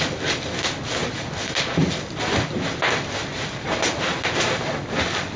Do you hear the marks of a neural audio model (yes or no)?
no